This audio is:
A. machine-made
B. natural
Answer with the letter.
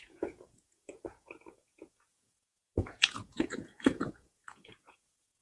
A